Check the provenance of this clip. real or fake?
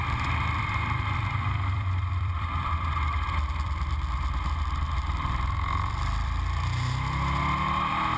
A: fake